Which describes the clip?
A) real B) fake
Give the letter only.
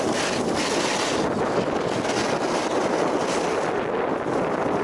A